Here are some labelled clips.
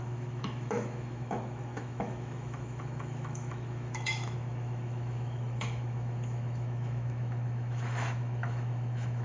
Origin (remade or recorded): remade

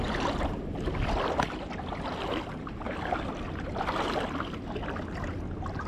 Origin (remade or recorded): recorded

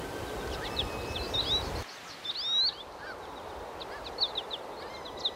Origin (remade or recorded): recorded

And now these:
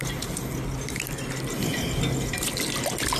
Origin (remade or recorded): recorded